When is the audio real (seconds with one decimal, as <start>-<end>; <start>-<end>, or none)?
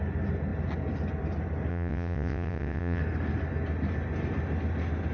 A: 0.0-1.7; 3.0-5.1